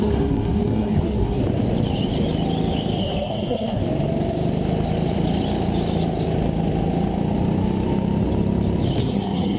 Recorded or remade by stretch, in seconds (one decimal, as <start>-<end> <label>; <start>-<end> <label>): 0.0-1.4 remade; 1.4-3.0 recorded; 3.0-3.8 remade; 3.8-9.0 recorded; 9.0-9.6 remade